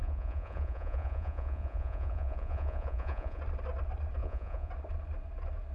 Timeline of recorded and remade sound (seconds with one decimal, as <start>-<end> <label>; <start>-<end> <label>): 0.0-3.4 remade; 3.4-4.2 recorded; 4.2-4.7 remade; 4.7-5.7 recorded